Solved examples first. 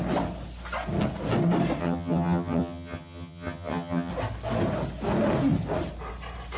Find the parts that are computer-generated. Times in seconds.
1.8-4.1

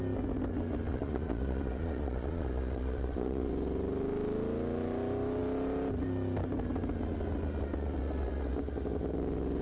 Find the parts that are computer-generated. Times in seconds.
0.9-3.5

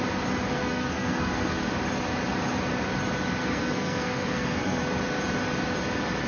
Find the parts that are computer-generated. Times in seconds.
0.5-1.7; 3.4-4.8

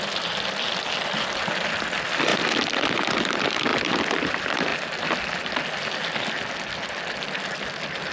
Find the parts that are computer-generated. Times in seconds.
none

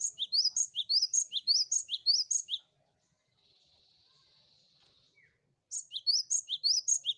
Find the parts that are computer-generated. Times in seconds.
none

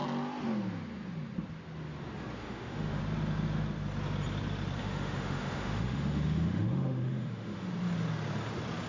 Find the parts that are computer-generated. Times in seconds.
2.4-3.0; 4.8-7.7

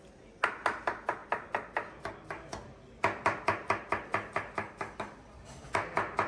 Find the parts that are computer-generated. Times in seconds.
none

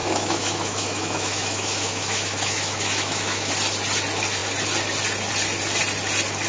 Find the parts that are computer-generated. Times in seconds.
0.0-3.5